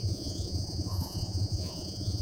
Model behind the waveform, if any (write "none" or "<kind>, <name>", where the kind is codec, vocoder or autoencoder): vocoder, Vocos